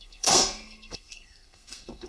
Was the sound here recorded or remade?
remade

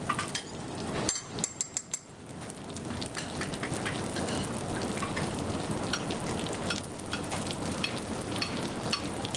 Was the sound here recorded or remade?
recorded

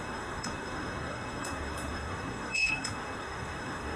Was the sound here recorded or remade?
remade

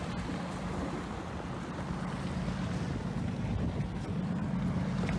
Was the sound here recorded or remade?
recorded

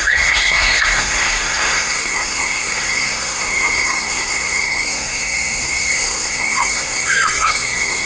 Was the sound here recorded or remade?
remade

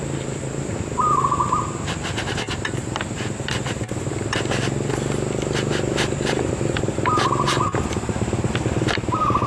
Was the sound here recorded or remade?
recorded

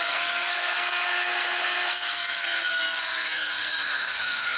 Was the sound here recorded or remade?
remade